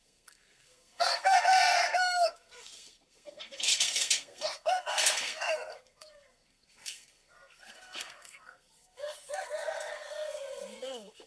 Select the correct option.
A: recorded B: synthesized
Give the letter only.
B